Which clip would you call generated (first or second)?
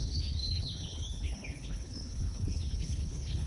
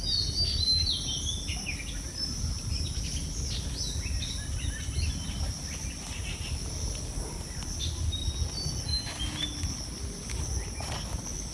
first